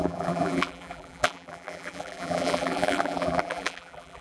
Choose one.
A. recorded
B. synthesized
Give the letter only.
B